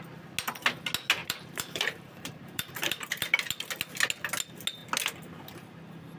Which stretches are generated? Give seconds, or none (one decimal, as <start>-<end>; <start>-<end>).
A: 1.2-3.3

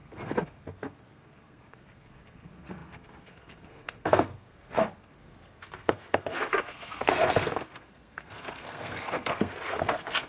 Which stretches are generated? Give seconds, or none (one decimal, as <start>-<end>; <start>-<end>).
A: 0.0-10.3

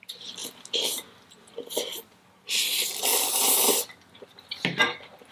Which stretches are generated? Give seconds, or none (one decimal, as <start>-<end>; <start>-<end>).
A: none

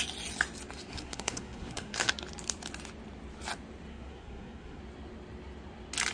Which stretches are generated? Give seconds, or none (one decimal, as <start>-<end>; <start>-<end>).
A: 0.9-2.1; 3.9-4.8

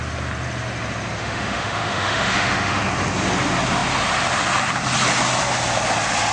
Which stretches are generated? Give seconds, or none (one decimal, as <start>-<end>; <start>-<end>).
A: 1.2-2.8

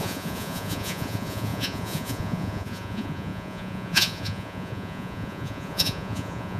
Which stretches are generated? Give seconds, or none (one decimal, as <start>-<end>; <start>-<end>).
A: 0.0-6.6

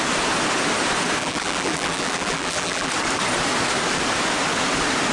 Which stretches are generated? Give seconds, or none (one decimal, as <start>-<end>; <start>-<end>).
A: 1.2-2.9